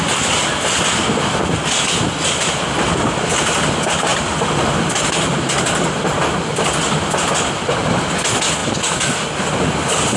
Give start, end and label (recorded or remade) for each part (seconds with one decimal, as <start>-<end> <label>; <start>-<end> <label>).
0.0-10.2 recorded